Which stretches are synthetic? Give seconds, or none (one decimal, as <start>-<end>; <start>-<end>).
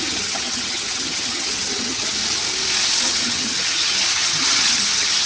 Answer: 0.0-2.2; 3.1-5.2